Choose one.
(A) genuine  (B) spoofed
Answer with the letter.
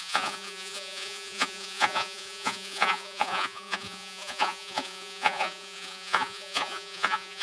B